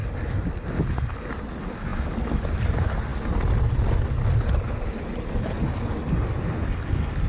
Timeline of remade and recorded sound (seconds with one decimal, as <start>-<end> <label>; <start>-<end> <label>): 0.0-7.3 recorded